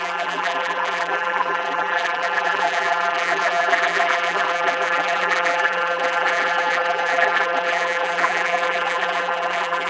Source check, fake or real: fake